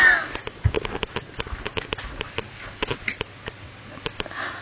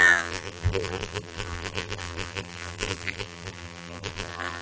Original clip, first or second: first